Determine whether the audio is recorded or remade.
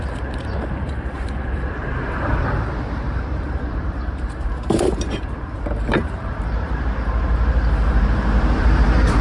remade